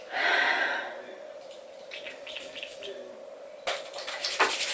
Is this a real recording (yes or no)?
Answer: yes